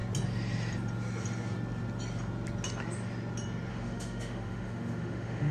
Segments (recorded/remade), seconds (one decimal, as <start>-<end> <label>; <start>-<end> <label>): 0.0-3.7 recorded; 3.7-5.5 remade